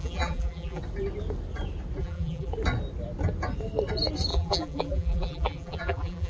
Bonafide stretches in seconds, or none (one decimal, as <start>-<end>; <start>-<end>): 0.8-2.0; 2.5-4.3